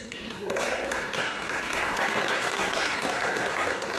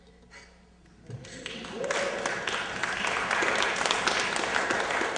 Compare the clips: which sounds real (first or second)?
second